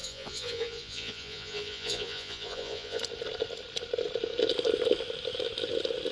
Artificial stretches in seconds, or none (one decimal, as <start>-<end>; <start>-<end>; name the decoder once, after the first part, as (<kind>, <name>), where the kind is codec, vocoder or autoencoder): 0.0-3.0 (vocoder, Vocos)